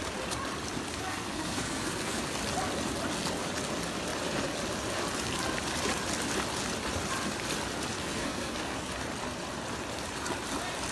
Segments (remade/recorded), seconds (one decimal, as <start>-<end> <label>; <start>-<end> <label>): 0.0-0.9 recorded; 0.9-2.2 remade; 2.2-8.0 recorded; 8.0-8.9 remade; 8.9-10.9 recorded